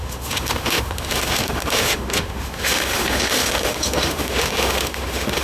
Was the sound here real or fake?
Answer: fake